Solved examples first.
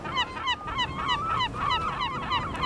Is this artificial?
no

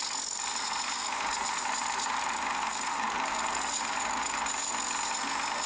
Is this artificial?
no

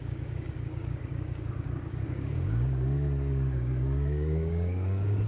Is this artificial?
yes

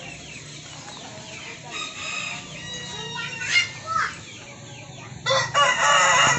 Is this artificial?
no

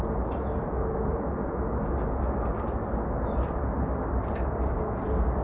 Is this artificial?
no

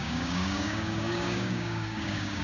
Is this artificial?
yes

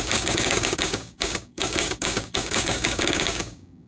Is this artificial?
yes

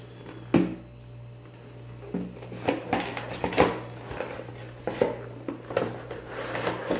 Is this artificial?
no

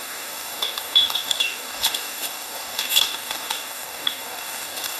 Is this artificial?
yes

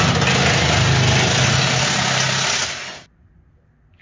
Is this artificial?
no